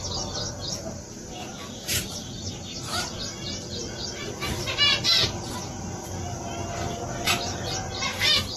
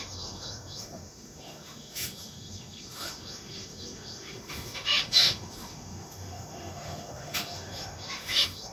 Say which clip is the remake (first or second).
second